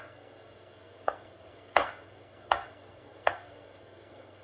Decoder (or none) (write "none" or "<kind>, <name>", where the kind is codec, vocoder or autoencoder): codec, SNAC